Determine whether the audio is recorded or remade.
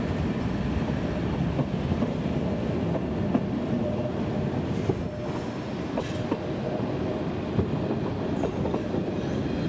recorded